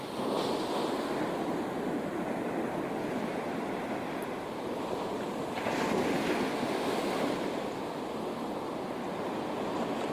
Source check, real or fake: real